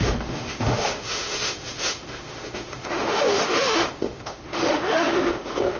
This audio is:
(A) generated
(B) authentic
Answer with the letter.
A